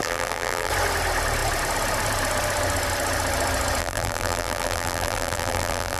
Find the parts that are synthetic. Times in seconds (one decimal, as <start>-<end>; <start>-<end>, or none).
0.0-0.7; 3.8-6.0